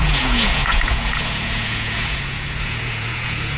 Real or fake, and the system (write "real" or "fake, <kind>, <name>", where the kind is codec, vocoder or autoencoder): fake, vocoder, Vocos